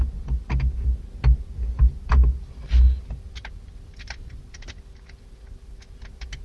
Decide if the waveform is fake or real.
real